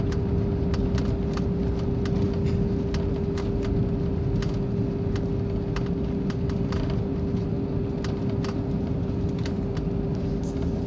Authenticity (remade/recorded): recorded